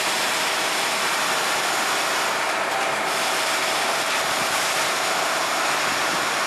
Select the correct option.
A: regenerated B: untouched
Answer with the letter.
A